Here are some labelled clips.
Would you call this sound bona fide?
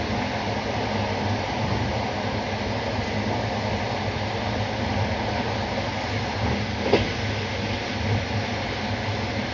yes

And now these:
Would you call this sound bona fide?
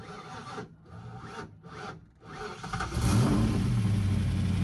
yes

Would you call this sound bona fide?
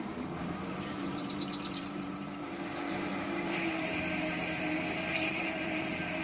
no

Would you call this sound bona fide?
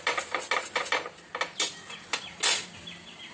yes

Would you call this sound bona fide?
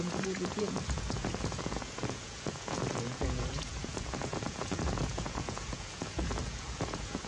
no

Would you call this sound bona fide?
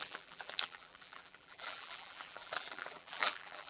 no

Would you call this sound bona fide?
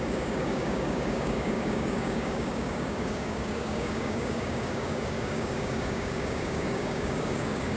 no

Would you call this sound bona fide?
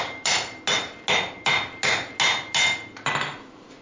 yes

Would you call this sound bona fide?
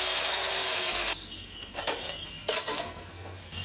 no